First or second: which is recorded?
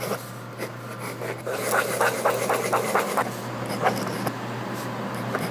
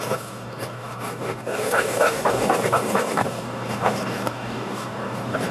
first